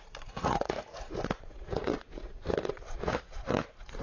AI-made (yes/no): yes